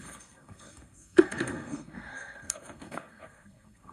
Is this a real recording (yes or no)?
no